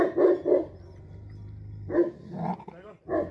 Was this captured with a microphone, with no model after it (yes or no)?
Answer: yes